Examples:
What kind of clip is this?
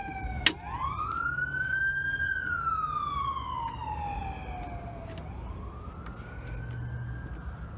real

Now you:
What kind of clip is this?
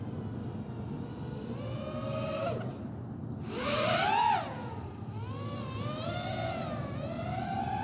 real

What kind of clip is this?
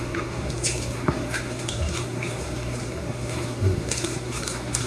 fake